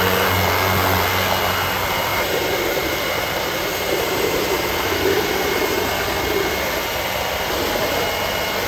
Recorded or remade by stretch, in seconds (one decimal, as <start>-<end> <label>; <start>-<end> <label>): 0.0-2.1 recorded; 2.1-5.9 remade; 5.9-8.7 recorded